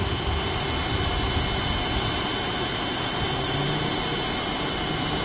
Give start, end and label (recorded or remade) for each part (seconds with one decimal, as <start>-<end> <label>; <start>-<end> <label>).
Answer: 0.0-5.2 recorded